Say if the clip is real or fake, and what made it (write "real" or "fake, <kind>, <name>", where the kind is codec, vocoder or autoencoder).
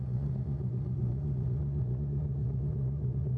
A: fake, vocoder, Vocos